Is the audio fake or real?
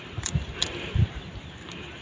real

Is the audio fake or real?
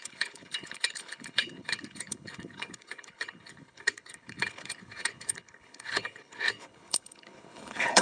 fake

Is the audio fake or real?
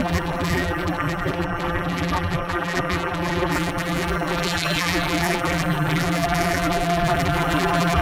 fake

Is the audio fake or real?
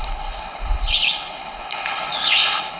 fake